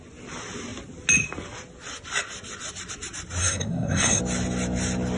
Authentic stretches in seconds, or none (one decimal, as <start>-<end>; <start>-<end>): 0.0-3.4; 4.2-5.2